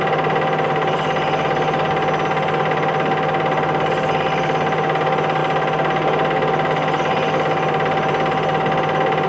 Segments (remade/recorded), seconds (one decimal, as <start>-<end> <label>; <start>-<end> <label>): 0.0-9.3 recorded